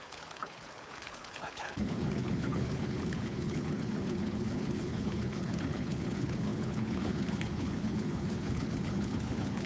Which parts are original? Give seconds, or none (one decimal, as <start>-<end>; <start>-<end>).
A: none